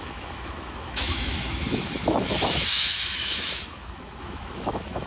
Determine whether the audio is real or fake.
fake